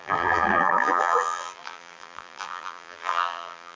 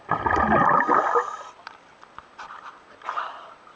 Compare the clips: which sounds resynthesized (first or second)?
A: first